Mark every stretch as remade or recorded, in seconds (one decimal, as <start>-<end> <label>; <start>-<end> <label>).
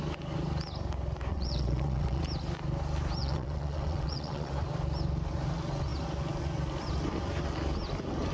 0.0-1.3 recorded; 1.3-2.2 remade; 2.2-3.2 recorded; 3.2-4.5 remade; 4.5-8.3 recorded